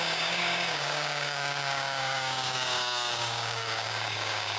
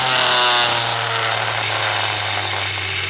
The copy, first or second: first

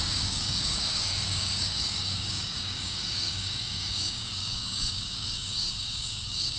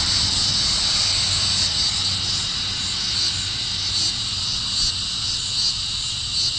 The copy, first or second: first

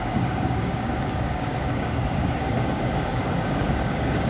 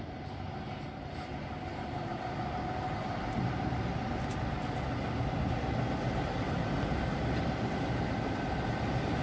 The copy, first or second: first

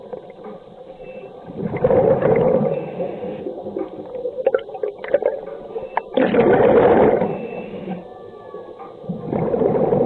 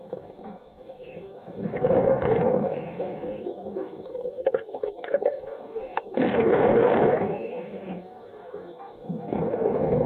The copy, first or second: second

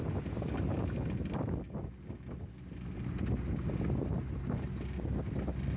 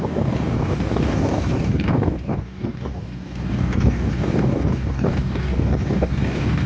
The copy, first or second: second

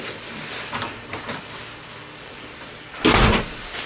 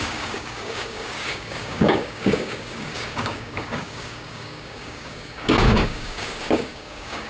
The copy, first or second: second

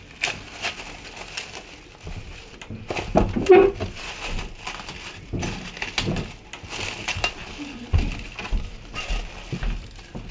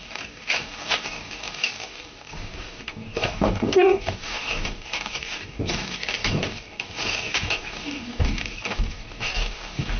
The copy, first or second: second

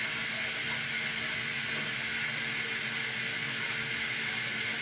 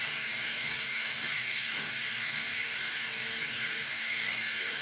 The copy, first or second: second